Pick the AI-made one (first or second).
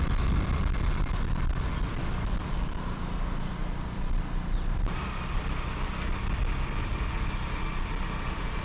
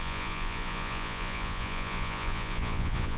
second